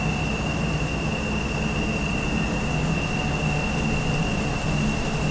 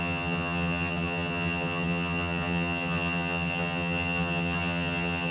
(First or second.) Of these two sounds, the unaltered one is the first